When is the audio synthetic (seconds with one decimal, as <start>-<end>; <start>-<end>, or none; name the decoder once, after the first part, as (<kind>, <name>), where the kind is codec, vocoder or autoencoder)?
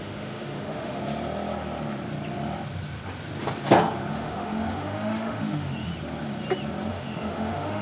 0.0-1.0 (autoencoder, DAC-VAE); 4.1-5.9; 6.9-7.8